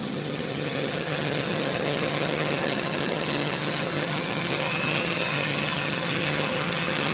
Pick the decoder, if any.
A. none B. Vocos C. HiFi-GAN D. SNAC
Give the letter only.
C